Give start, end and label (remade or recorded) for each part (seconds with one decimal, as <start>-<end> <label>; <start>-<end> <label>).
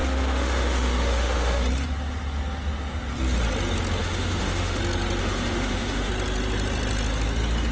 0.0-1.6 remade; 1.6-4.0 recorded; 4.0-4.8 remade; 4.8-5.2 recorded; 5.2-6.1 remade; 6.1-7.7 recorded